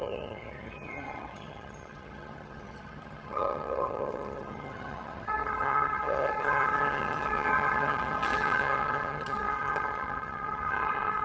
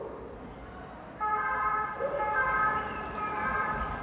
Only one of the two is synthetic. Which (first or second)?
first